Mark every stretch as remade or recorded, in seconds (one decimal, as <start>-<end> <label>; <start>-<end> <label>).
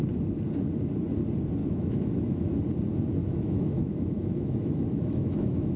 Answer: 0.0-1.6 recorded; 1.6-2.6 remade; 2.6-3.2 recorded; 3.2-5.8 remade